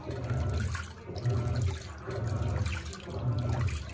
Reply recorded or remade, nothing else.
recorded